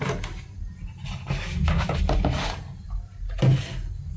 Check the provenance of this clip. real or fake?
real